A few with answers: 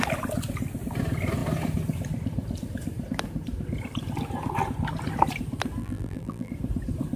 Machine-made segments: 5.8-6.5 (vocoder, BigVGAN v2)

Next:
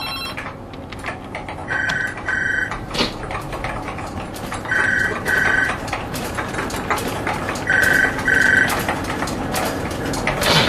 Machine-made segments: 1.6-6.4 (vocoder, BigVGAN v2)

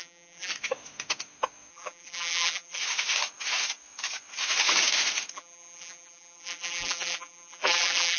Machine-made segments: 0.0-0.5 (vocoder, BigVGAN v2); 1.7-2.8; 5.3-8.2

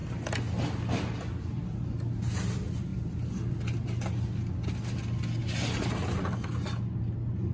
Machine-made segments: none